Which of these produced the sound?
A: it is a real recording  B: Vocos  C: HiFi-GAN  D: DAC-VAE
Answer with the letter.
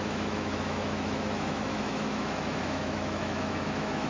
D